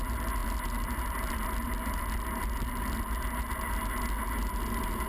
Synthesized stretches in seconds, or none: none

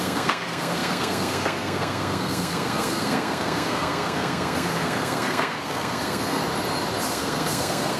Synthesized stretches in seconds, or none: 0.0-6.4 (codec, SNAC); 7.1-8.0

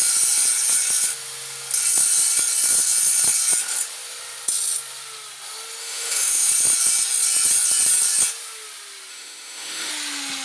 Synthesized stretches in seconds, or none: 5.8-6.5 (autoencoder, DAC-VAE); 9.1-9.9

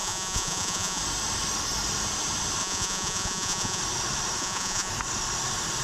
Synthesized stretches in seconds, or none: 0.0-1.0 (vocoder, Vocos); 2.6-3.8; 4.4-4.9

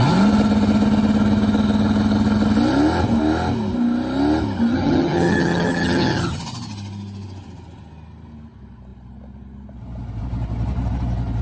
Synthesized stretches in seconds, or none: 4.7-6.4 (vocoder, HiFi-GAN)

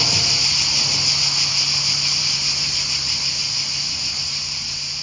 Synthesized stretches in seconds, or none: none

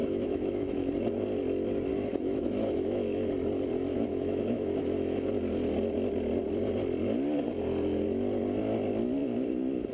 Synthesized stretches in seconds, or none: 0.0-0.9 (autoencoder, DAC-VAE); 1.9-3.3; 3.9-5.3